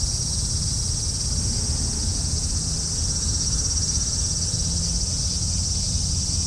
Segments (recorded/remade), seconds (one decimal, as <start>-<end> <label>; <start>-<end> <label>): 0.0-6.5 recorded